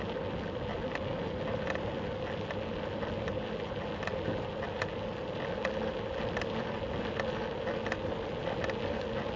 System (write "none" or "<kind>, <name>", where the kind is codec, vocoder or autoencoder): none